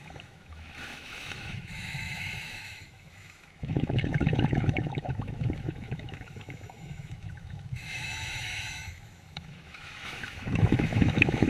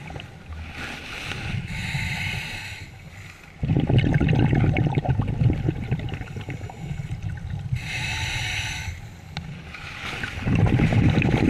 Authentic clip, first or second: second